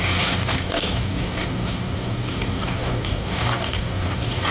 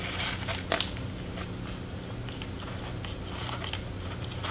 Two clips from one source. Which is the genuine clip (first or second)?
second